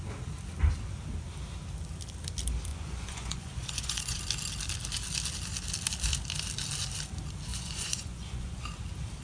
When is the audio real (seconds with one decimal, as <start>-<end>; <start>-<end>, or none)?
0.0-2.7; 4.2-7.5; 8.6-9.2